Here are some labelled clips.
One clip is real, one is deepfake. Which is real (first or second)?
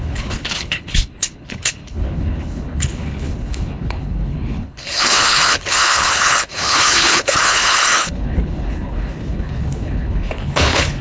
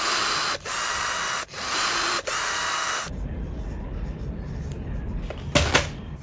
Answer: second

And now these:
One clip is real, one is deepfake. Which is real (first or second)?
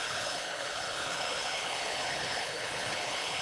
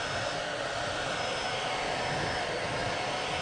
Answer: second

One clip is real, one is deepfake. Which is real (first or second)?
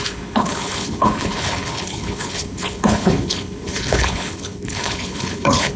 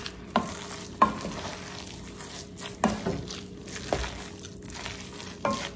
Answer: second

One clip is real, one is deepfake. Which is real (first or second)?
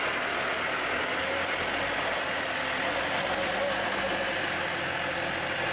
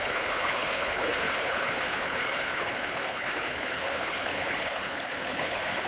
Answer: first